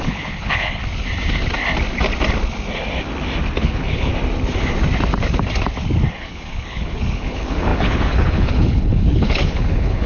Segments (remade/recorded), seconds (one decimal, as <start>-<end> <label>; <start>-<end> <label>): 0.0-0.8 remade; 0.8-3.6 recorded; 3.6-4.1 remade; 4.1-6.1 recorded; 6.1-10.1 remade